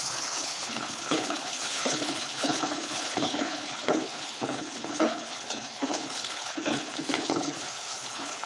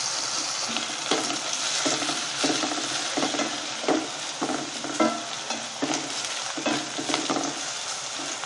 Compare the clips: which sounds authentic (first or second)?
second